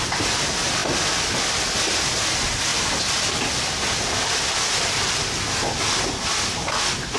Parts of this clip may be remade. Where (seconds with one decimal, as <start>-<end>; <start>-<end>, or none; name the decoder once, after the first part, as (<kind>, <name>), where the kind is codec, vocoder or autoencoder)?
none